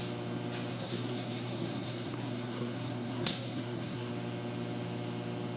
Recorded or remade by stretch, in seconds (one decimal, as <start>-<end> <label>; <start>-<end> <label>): 0.0-0.7 recorded; 0.7-4.1 remade; 4.1-5.6 recorded